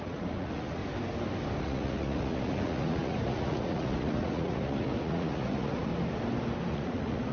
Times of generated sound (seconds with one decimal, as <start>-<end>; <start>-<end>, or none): 0.0-0.8; 1.6-5.9; 6.7-7.3